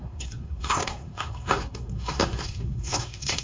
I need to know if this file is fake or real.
fake